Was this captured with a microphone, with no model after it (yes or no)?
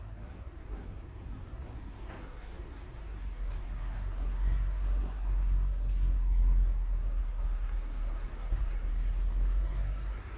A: no